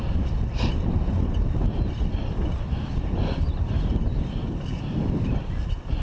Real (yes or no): yes